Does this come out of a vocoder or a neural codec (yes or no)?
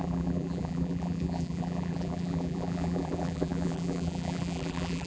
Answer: yes